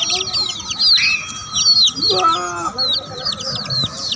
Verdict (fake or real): real